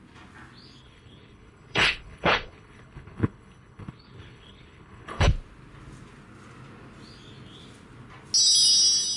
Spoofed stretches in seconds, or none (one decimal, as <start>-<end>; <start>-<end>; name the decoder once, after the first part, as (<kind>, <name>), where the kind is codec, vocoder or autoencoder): 0.8-5.3 (codec, HILCodec)